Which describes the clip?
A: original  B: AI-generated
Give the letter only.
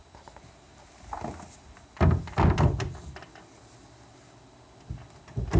A